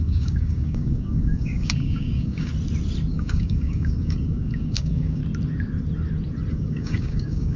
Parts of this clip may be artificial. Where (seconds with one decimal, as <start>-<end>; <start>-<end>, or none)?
0.0-2.5; 3.1-5.2; 6.5-7.6